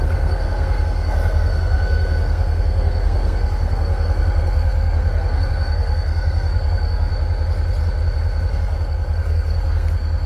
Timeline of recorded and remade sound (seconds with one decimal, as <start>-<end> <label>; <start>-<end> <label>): 0.0-7.1 remade; 7.1-8.5 recorded; 8.5-10.3 remade